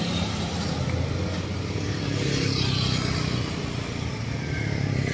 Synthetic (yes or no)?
no